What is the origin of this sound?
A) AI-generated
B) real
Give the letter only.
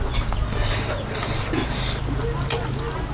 B